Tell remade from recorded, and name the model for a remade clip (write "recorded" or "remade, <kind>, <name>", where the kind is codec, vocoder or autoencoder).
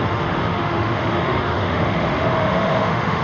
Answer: remade, autoencoder, DAC-VAE